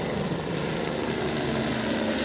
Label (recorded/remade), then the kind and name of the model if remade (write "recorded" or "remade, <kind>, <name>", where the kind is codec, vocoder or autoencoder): recorded